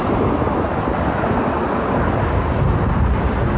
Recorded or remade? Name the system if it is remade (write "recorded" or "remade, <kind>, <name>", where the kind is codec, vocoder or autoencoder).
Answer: recorded